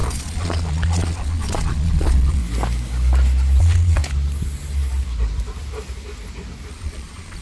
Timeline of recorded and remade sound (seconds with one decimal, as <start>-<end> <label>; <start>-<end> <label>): 0.0-2.4 remade; 2.4-3.6 recorded; 3.6-4.0 remade; 4.0-6.7 recorded; 6.7-7.4 remade